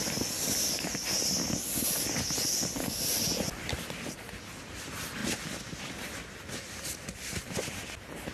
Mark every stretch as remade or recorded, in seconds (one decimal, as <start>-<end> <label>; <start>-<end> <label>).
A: 0.0-8.3 recorded